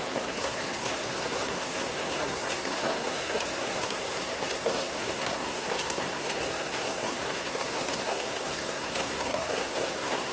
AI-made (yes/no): yes